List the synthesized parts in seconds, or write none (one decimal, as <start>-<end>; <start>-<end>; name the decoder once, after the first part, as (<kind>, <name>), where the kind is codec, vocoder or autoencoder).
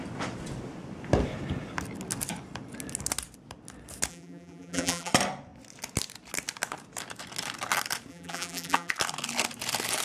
4.1-5.1 (vocoder, BigVGAN v2); 8.1-8.9